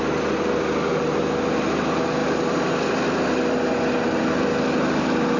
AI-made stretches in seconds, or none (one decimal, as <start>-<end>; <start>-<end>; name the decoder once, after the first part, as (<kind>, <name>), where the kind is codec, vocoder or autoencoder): none